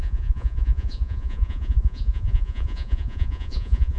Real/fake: fake